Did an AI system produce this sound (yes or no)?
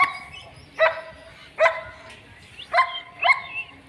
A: no